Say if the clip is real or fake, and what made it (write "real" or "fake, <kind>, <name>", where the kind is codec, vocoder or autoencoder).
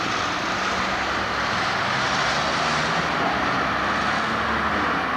real